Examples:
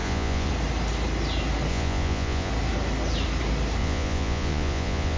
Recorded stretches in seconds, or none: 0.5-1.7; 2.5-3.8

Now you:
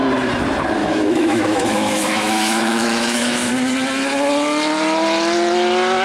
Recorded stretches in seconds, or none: 0.0-0.8; 3.5-6.0

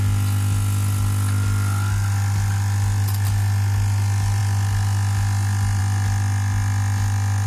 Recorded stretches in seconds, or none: 0.0-7.5

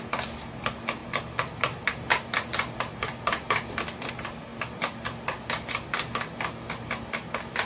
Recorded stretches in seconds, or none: 0.0-1.0; 4.1-7.7

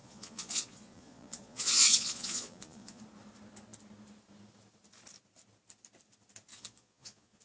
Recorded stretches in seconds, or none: 3.0-6.5

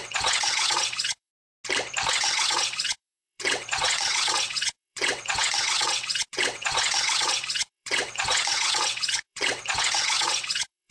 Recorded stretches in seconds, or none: 1.3-2.1

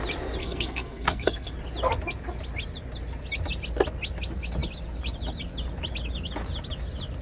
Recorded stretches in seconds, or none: 0.0-0.4; 1.5-7.2

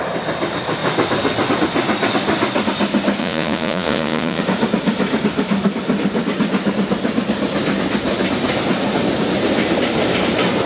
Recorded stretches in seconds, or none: 0.0-3.2; 4.4-10.7